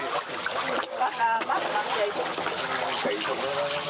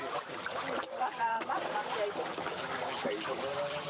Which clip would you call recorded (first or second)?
first